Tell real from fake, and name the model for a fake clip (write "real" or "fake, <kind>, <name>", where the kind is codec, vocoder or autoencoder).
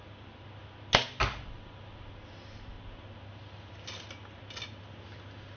real